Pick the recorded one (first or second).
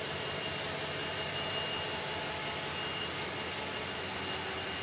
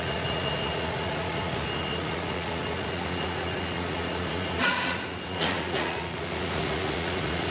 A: first